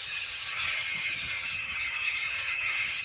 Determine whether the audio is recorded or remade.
remade